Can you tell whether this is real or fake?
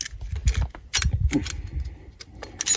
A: real